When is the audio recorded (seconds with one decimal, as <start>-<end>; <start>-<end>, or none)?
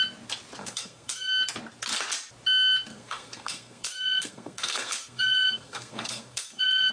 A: 0.0-0.6; 1.3-2.9